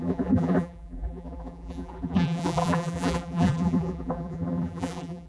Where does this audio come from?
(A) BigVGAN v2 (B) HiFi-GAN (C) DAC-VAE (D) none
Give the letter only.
A